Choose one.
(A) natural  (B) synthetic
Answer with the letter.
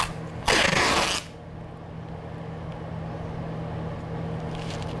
A